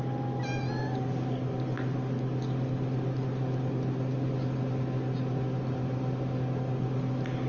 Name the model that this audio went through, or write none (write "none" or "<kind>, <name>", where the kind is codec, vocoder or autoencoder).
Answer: none